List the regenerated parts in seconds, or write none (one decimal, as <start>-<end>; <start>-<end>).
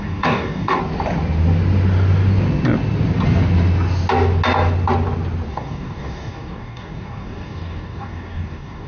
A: 0.0-0.8; 5.5-8.9